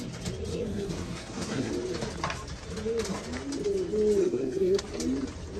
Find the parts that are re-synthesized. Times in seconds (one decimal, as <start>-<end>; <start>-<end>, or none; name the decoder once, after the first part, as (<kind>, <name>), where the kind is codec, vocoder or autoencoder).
0.5-1.7 (codec, SNAC); 4.2-4.8